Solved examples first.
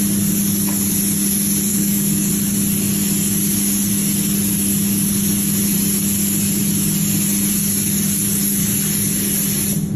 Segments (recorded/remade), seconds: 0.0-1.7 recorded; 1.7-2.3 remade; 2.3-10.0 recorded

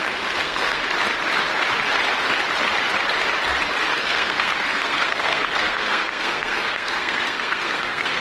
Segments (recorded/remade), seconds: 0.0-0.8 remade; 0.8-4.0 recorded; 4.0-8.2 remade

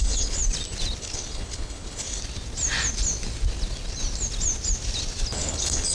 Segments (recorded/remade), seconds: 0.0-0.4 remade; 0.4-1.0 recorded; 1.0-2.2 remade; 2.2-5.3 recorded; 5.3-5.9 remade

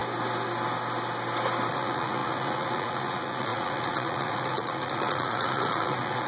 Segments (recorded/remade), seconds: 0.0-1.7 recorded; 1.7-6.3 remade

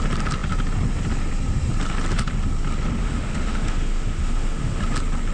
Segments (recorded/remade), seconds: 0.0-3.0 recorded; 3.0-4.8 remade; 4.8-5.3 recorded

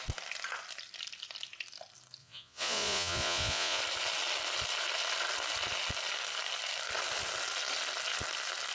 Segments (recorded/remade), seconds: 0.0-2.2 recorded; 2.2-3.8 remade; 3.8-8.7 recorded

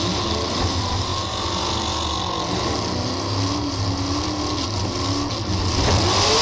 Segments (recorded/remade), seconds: 0.0-6.4 recorded

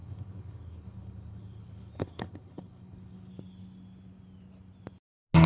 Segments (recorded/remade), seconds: 0.0-3.3 remade; 3.3-5.5 recorded